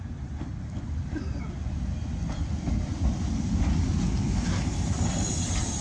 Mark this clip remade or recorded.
recorded